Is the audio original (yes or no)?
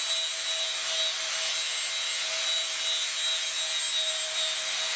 yes